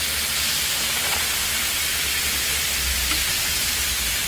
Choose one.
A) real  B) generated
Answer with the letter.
A